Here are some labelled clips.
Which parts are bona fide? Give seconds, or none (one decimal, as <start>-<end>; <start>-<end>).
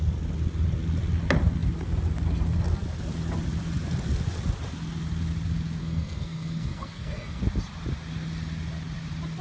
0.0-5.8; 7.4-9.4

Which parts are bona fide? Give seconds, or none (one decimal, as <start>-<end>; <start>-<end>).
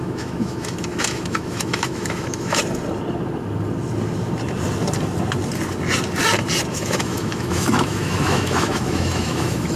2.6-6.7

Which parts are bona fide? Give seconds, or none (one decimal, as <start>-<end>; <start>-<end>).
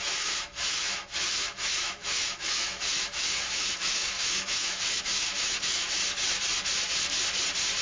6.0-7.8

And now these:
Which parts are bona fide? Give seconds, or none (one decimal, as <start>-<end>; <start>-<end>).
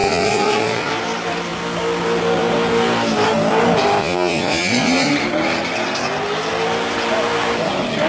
0.9-4.0; 5.1-8.1